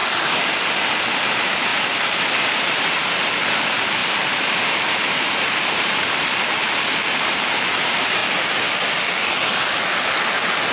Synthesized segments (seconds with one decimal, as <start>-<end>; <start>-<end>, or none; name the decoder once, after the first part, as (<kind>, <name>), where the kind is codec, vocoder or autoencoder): 1.1-8.2 (vocoder, BigVGAN v2)